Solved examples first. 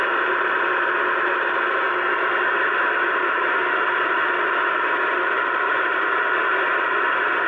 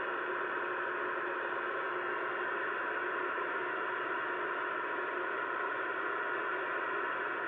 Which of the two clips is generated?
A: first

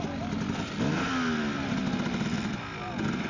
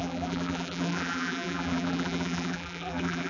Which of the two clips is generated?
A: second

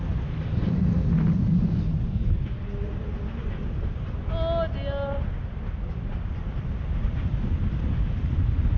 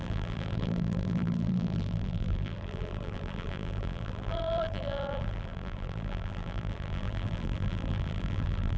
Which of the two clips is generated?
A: second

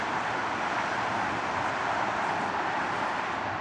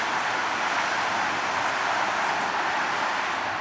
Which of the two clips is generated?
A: first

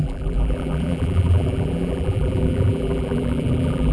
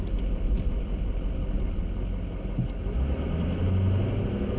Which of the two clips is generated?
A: first